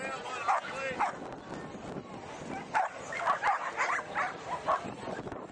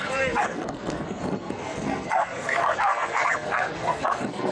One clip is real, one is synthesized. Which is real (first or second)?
first